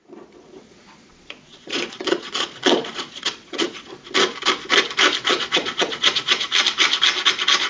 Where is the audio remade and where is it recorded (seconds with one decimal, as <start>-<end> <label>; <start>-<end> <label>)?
0.0-3.9 remade; 3.9-5.3 recorded; 5.3-6.5 remade; 6.5-7.7 recorded